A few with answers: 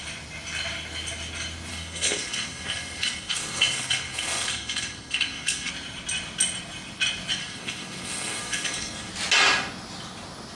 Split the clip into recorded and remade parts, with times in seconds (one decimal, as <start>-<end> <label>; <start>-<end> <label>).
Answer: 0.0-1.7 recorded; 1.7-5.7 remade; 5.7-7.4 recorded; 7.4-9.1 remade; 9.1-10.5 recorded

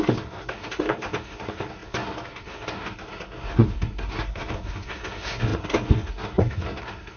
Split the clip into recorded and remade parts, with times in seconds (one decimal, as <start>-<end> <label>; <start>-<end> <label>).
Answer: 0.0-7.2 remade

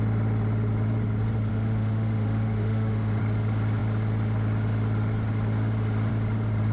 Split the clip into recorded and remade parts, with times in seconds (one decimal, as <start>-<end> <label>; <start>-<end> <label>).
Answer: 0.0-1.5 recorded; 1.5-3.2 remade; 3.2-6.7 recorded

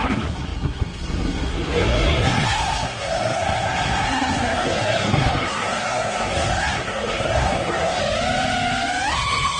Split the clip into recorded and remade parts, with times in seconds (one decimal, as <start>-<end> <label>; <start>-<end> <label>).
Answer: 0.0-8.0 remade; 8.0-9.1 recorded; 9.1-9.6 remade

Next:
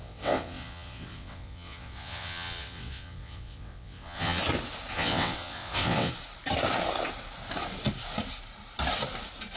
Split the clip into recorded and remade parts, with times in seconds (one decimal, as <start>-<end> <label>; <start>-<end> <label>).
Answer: 0.0-4.4 remade; 4.4-4.9 recorded; 4.9-6.1 remade; 6.1-9.6 recorded

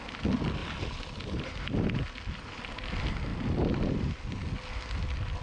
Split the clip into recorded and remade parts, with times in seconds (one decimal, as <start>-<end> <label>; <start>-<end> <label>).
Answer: 0.0-0.6 recorded; 0.6-2.0 remade; 2.0-3.3 recorded; 3.3-4.2 remade; 4.2-5.4 recorded